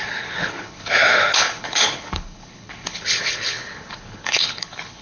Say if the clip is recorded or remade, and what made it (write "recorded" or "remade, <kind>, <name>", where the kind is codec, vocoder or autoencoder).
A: remade, codec, HILCodec